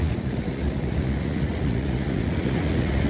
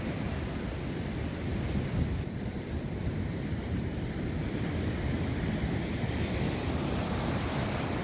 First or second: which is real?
second